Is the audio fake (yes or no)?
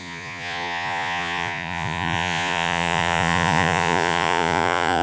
yes